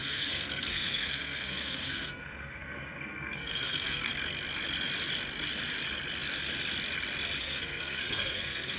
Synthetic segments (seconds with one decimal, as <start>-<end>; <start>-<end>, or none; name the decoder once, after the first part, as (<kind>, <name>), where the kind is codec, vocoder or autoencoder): 0.0-4.1 (codec, SNAC); 7.4-8.8